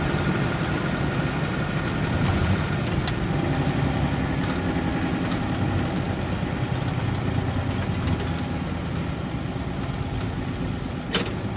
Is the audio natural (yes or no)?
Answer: yes